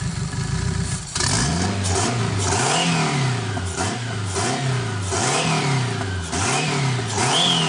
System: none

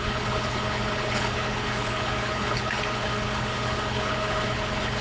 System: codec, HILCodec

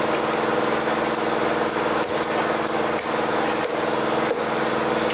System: none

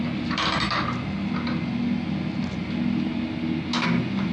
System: none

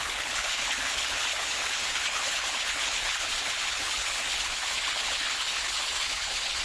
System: codec, HILCodec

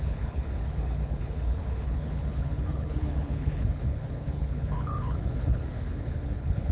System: codec, HILCodec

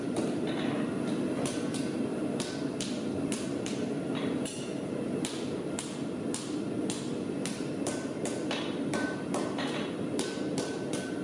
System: none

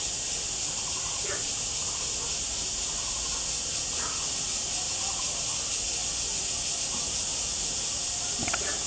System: none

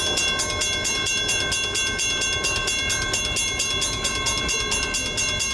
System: none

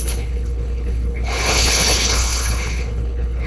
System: codec, HILCodec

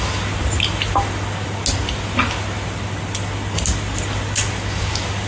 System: none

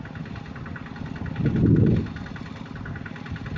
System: none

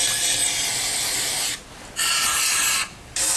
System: none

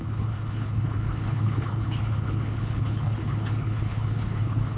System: codec, HILCodec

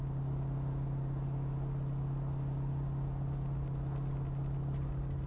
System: none